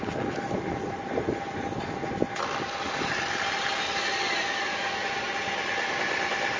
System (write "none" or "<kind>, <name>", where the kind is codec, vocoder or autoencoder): vocoder, BigVGAN v2